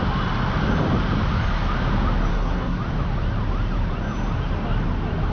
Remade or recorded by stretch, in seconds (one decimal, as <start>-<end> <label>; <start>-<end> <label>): 0.0-2.3 recorded; 2.3-2.8 remade; 2.8-5.3 recorded